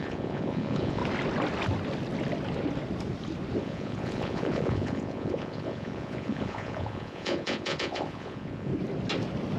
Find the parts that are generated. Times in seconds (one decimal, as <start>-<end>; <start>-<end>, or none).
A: 0.0-1.0; 3.6-8.7

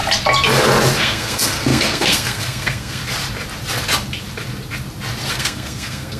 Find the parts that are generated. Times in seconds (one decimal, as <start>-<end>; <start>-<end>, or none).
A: 1.0-3.0; 5.3-6.2

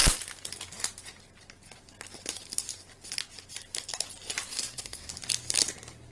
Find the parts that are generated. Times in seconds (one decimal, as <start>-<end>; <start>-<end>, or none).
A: 4.5-5.1

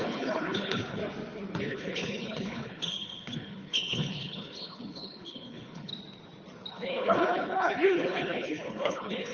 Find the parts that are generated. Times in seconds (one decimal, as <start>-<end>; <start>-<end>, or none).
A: 0.0-1.0; 1.6-5.9; 6.7-9.3

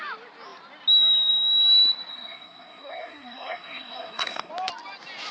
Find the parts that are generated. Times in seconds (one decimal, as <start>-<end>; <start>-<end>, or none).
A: 2.1-4.5

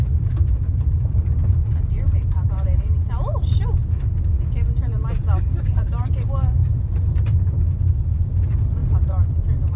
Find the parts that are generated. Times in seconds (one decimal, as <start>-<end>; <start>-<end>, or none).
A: 8.8-9.3

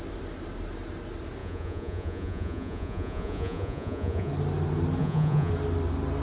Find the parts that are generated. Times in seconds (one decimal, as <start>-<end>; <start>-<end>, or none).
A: 1.4-4.3; 5.0-5.5

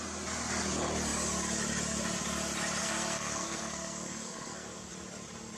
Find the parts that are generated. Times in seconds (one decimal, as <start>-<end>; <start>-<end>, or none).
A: 2.8-4.9